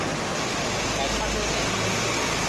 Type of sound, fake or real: real